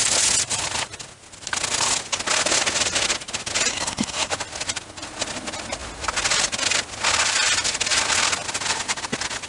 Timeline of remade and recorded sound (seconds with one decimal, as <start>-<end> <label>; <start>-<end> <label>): 0.0-3.7 recorded; 3.7-4.3 remade; 4.3-9.5 recorded